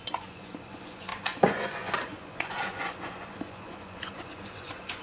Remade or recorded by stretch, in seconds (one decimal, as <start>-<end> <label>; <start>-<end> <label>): 0.0-5.0 remade